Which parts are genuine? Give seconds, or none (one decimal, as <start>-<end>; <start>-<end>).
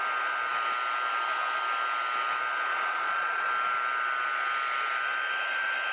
0.0-2.7; 3.5-5.9